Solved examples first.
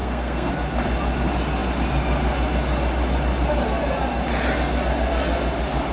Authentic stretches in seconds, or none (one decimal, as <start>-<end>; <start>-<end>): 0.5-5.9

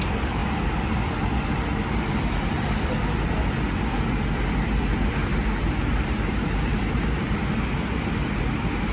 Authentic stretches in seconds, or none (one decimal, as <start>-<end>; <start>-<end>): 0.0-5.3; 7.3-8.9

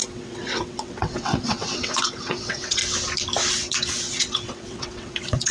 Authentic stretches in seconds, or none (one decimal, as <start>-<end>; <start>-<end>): 2.8-3.5

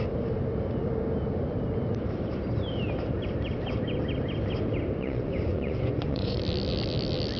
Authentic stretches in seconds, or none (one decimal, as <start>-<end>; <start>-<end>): 0.0-5.0; 6.4-7.4

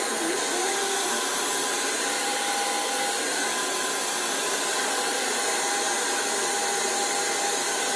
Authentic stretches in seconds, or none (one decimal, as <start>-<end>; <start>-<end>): 0.0-8.0

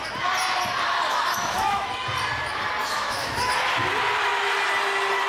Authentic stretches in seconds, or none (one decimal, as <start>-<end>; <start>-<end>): 0.0-1.1; 1.9-2.8; 3.5-5.3